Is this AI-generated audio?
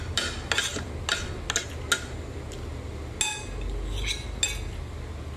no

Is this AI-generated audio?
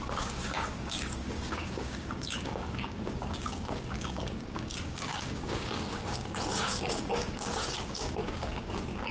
yes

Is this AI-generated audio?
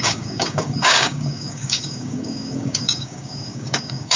yes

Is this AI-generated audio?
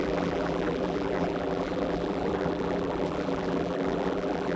yes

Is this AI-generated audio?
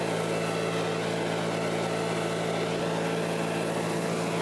no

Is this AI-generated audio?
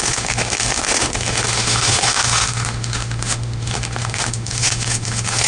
yes